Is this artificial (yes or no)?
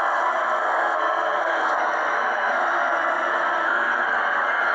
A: yes